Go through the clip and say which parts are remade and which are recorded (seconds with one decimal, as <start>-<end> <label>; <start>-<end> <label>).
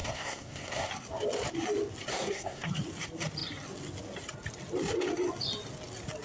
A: 0.0-0.9 remade; 0.9-2.1 recorded; 2.1-2.7 remade; 2.7-6.2 recorded